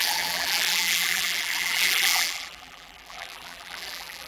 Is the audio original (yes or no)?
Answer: no